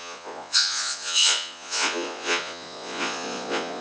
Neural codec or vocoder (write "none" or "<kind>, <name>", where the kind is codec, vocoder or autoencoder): vocoder, Vocos